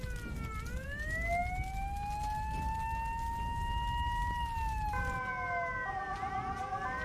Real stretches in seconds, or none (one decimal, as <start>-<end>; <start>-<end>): 0.0-7.0

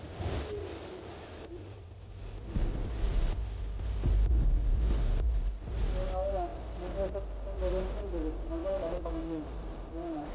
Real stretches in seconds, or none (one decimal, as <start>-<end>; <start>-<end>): 0.0-8.6; 9.4-10.3

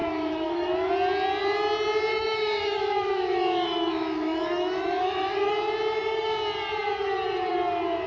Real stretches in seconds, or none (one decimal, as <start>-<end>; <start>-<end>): 0.9-2.1; 5.5-8.1